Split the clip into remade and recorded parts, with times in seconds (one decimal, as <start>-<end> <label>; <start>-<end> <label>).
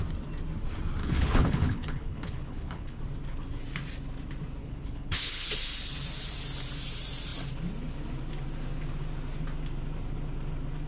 0.0-1.0 recorded; 1.0-3.0 remade; 3.0-4.6 recorded; 4.6-5.5 remade; 5.5-10.9 recorded